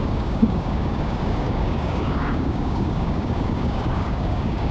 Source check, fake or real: fake